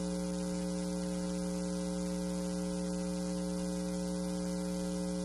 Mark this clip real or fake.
real